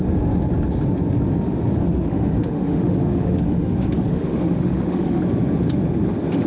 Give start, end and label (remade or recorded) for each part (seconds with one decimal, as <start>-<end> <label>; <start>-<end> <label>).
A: 0.0-1.8 recorded; 1.8-5.2 remade; 5.2-6.5 recorded